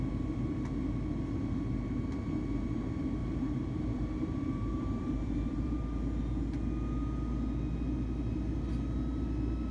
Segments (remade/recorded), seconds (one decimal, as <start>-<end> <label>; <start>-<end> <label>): 0.0-3.2 recorded; 3.2-5.8 remade; 5.8-9.7 recorded